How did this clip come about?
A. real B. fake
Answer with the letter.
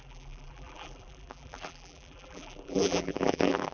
B